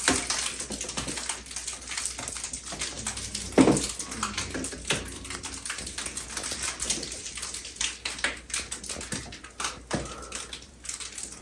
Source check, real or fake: real